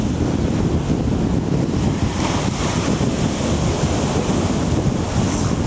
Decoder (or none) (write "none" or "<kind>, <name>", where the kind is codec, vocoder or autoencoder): none